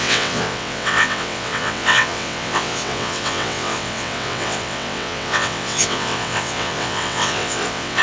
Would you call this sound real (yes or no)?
no